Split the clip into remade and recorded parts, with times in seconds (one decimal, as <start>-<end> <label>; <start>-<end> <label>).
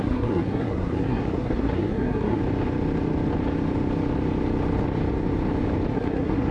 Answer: 0.0-2.4 remade; 2.4-5.9 recorded; 5.9-6.5 remade